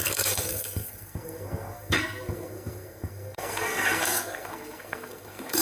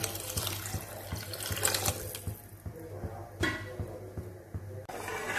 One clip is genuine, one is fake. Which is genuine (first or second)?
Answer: second